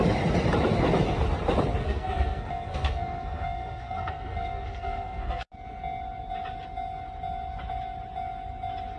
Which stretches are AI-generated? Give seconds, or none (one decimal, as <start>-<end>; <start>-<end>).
1.8-5.5